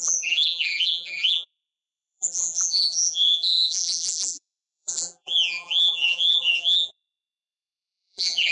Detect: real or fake fake